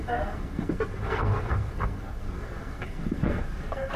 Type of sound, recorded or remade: remade